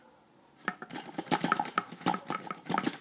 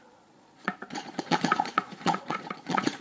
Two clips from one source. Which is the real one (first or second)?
first